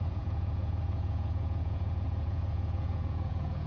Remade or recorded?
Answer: remade